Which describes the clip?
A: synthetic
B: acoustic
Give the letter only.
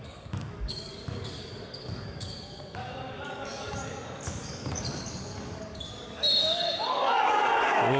A